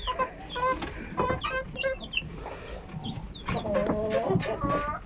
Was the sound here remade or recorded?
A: recorded